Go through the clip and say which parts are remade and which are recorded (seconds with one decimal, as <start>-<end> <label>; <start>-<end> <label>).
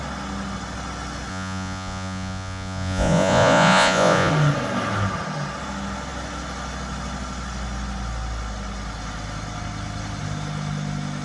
0.0-1.3 recorded; 1.3-4.3 remade; 4.3-11.2 recorded